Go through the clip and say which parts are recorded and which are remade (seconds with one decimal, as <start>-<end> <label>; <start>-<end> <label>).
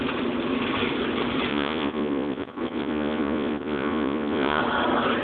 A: 0.0-1.5 recorded; 1.5-4.6 remade; 4.6-5.2 recorded